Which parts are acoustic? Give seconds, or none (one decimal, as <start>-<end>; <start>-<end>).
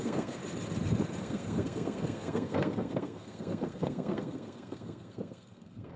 0.4-1.2